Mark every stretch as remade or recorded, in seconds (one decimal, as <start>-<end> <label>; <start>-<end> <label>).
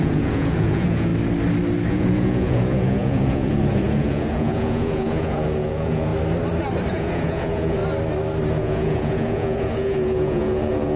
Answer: 0.0-1.1 remade; 1.1-1.9 recorded; 1.9-6.1 remade; 6.1-6.9 recorded; 6.9-7.8 remade; 7.8-8.5 recorded; 8.5-11.0 remade